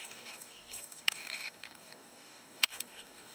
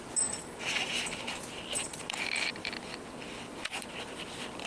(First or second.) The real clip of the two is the second